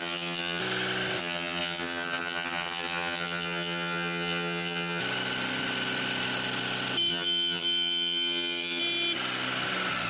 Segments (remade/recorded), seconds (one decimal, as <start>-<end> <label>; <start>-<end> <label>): 0.0-0.6 remade; 0.6-1.2 recorded; 1.2-5.0 remade; 5.0-7.1 recorded; 7.1-8.8 remade; 8.8-10.1 recorded